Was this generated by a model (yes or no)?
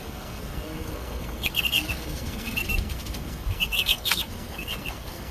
yes